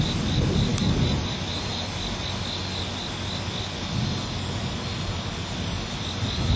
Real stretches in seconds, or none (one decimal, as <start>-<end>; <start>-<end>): 0.0-6.6